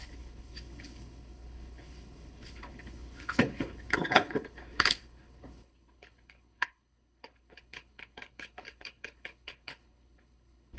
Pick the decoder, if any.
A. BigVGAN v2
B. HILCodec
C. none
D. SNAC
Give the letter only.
B